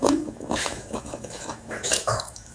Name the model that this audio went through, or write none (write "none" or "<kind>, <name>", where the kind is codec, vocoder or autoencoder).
autoencoder, DAC-VAE